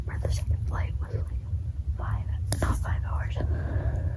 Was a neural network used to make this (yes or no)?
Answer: no